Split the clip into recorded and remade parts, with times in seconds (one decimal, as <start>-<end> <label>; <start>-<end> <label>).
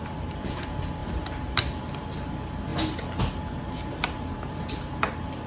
0.0-5.5 recorded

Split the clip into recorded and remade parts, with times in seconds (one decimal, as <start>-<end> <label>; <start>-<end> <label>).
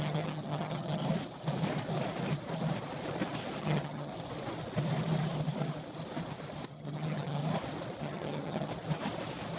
0.0-1.0 remade; 1.0-3.6 recorded; 3.6-4.1 remade; 4.1-6.7 recorded; 6.7-7.4 remade; 7.4-8.0 recorded; 8.0-8.7 remade; 8.7-9.6 recorded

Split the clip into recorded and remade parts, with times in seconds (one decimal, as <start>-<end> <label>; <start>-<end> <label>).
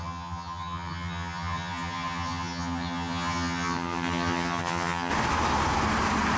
0.0-5.1 remade; 5.1-6.4 recorded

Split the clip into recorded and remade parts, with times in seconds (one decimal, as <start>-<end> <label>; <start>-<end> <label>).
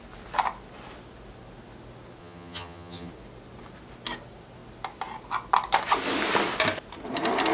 0.0-2.2 recorded; 2.2-3.1 remade; 3.1-7.5 recorded